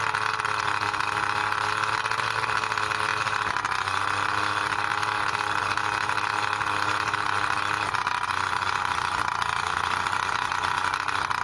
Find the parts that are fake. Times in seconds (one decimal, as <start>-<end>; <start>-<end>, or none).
none